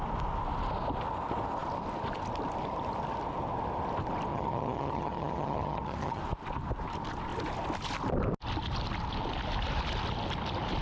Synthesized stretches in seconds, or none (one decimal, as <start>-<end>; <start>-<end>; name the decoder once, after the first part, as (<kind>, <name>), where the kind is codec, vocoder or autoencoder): 4.3-6.2 (vocoder, HiFi-GAN)